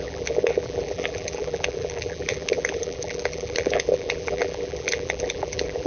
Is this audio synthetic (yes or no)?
yes